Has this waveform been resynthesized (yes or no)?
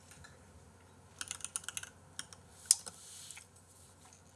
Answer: no